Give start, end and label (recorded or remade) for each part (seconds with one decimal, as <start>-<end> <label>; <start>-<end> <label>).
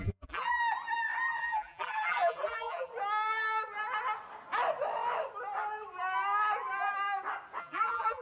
0.0-0.6 remade; 0.6-1.4 recorded; 1.4-2.9 remade; 2.9-7.6 recorded; 7.6-8.2 remade